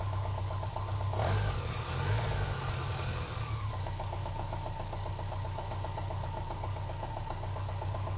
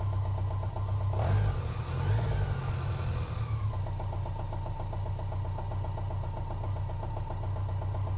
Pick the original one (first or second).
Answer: second